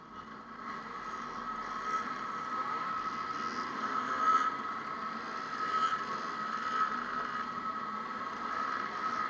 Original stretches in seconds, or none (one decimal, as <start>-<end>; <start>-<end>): 0.0-3.7; 4.2-9.3